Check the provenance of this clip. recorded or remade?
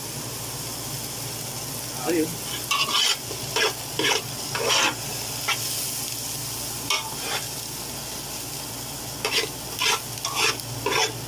recorded